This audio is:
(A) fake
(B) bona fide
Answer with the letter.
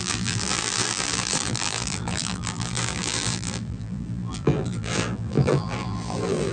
A